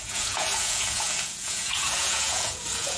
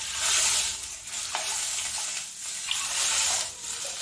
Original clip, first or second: second